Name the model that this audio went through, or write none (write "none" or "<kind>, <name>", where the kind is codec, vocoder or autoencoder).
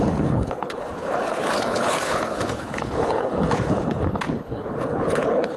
codec, HILCodec